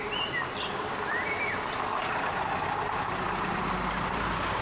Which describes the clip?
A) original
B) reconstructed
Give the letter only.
A